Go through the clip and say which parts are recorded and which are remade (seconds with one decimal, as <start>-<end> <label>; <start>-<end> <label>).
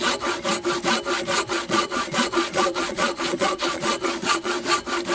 0.0-1.4 recorded; 1.4-4.5 remade; 4.5-5.1 recorded